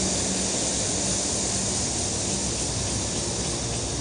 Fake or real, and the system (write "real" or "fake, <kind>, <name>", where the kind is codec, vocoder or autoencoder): real